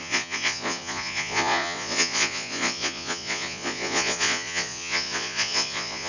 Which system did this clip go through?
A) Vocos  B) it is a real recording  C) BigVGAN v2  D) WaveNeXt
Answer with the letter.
A